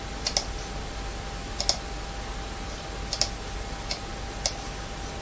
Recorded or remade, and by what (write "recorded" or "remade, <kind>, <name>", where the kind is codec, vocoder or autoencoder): recorded